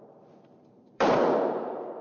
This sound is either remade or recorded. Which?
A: remade